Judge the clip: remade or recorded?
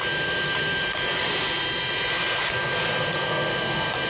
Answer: recorded